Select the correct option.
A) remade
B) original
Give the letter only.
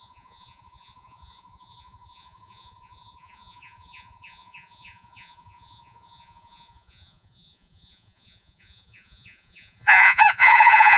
A